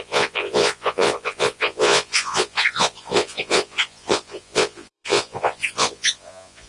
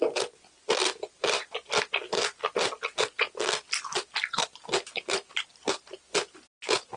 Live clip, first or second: second